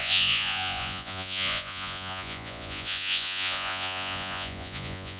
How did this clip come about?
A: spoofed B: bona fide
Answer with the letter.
A